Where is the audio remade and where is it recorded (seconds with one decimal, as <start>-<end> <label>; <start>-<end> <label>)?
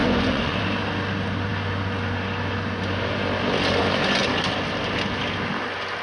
0.0-0.6 remade; 0.6-6.0 recorded